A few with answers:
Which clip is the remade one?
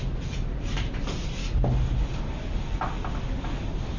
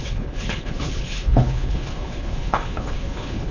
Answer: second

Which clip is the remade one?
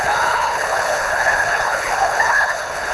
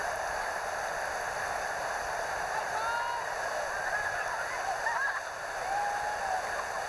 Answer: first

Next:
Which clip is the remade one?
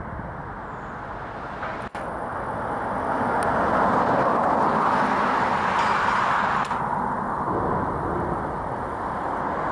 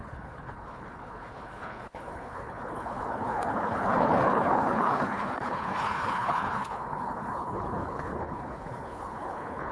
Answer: second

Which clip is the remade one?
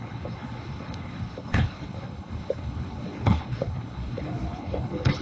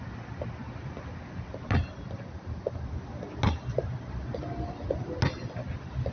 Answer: first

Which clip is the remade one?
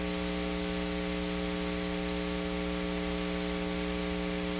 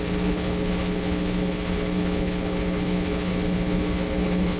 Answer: second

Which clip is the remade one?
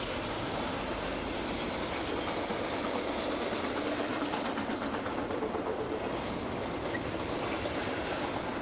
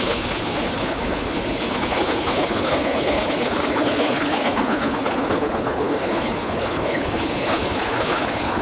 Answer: second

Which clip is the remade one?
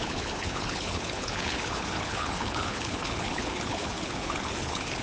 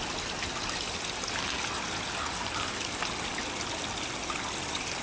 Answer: first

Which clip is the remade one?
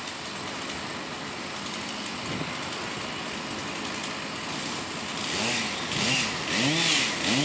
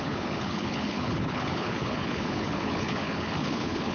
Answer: second